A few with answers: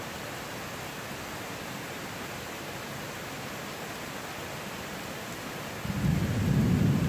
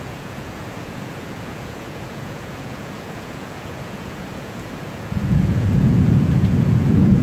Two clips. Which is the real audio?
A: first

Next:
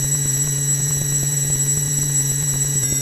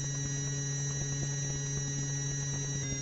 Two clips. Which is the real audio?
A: second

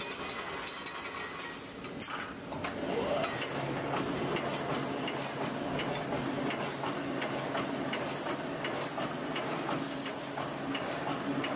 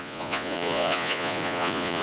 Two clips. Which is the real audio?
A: first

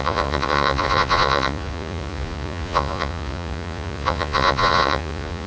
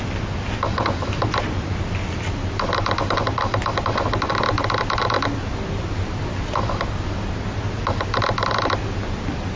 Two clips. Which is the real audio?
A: second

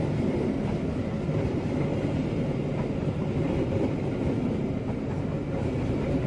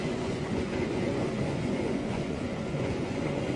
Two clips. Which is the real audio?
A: first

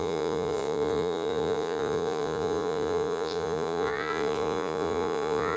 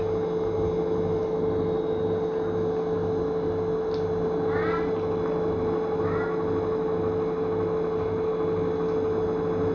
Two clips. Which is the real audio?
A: second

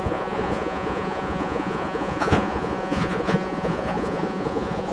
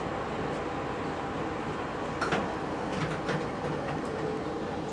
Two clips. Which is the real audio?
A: second